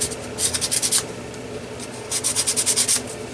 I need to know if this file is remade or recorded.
recorded